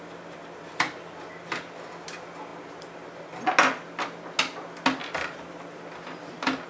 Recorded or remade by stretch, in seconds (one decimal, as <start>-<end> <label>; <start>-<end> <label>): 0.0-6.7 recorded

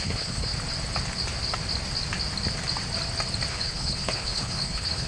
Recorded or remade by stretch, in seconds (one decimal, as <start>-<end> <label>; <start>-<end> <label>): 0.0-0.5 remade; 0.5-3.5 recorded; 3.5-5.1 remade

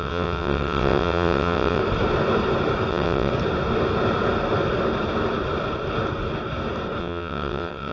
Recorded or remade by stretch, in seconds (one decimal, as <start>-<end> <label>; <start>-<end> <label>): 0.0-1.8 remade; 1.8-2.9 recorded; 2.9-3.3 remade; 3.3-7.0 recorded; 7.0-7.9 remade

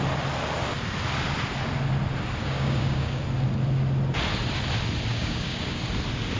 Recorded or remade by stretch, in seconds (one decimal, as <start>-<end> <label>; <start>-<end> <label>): 0.0-2.4 recorded; 2.4-3.2 remade; 3.2-5.1 recorded; 5.1-5.8 remade; 5.8-6.4 recorded